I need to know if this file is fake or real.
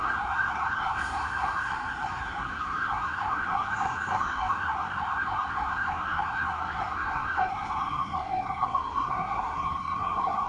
fake